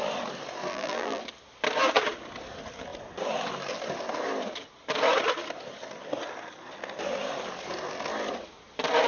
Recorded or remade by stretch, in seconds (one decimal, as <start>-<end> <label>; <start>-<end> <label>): 0.0-0.7 recorded; 0.7-1.2 remade; 1.2-9.1 recorded